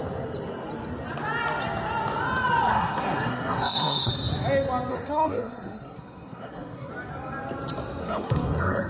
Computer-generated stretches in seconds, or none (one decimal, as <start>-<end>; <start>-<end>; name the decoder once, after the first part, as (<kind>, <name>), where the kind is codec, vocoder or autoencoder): 2.7-4.1 (codec, SNAC); 4.9-6.9; 8.0-8.9